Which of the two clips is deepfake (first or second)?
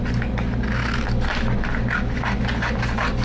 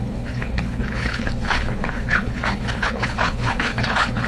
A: second